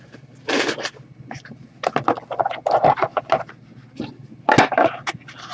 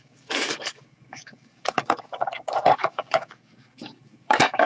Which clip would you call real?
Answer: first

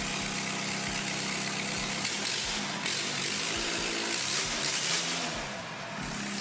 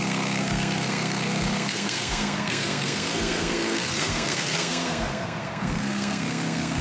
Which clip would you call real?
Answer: first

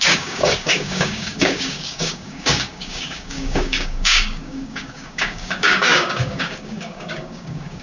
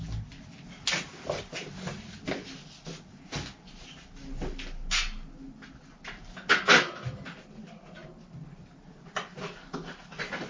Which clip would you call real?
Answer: second